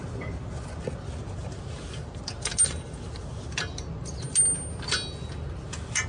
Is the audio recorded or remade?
recorded